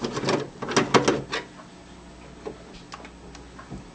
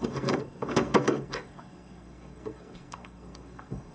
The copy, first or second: second